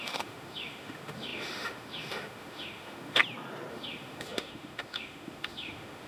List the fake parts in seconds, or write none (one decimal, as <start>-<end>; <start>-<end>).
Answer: 0.0-3.2; 3.7-6.1